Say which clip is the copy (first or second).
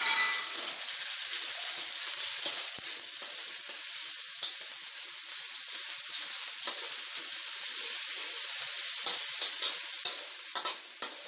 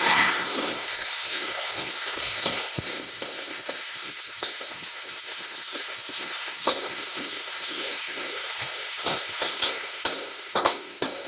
second